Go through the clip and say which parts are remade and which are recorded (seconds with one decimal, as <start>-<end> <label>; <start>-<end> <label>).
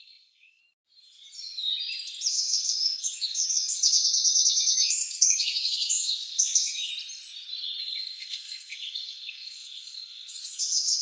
0.0-0.6 remade; 0.6-2.3 recorded; 2.3-6.9 remade; 6.9-7.8 recorded; 7.8-11.0 remade